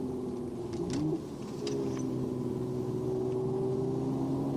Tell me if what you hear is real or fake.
real